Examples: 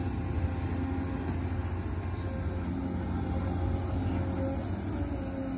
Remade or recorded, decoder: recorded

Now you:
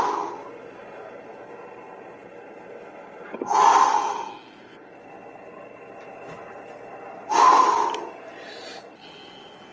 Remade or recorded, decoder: recorded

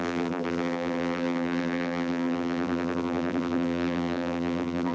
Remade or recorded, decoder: remade, vocoder, BigVGAN v2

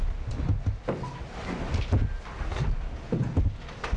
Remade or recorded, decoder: recorded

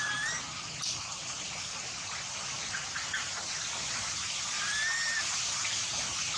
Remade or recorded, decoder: recorded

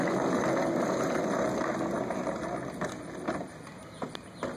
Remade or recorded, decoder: recorded